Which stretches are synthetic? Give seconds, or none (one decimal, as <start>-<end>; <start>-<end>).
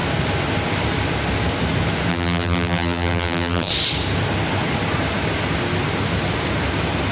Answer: 2.1-3.7